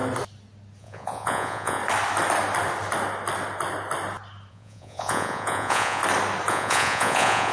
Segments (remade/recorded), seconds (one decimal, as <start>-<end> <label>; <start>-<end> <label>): 0.0-0.8 recorded; 0.8-1.8 remade; 1.8-4.5 recorded; 4.5-6.0 remade; 6.0-6.5 recorded; 6.5-7.5 remade